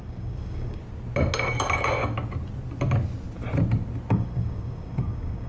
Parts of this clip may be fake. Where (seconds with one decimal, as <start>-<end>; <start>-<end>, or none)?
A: 0.0-0.8; 4.1-5.5